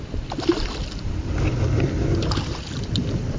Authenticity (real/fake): real